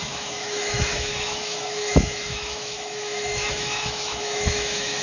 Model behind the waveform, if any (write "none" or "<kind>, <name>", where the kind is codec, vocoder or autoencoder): autoencoder, DAC-VAE